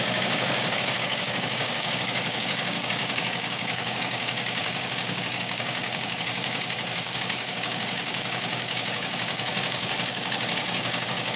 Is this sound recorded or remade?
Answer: remade